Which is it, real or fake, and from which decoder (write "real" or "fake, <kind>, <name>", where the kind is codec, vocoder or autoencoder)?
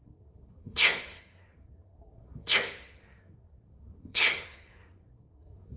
fake, codec, SNAC